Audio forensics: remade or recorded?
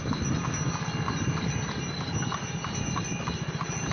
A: recorded